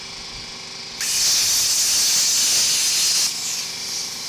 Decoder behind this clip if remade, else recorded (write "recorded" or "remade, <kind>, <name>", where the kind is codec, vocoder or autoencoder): recorded